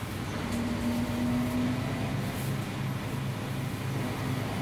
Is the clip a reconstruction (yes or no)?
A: no